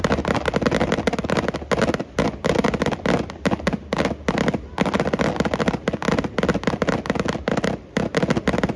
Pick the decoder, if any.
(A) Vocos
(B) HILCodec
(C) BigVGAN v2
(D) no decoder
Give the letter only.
D